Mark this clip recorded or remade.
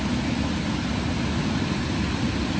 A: recorded